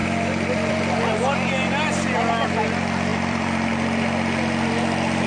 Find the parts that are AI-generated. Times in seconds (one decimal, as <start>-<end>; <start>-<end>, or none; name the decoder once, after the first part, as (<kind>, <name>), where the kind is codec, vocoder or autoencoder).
0.0-0.7 (vocoder, BigVGAN v2); 3.1-3.7